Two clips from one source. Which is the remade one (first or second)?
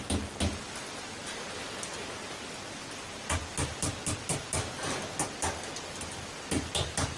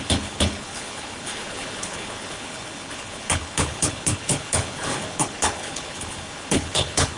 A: second